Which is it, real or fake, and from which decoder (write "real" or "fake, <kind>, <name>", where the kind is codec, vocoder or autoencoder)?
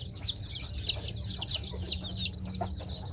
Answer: real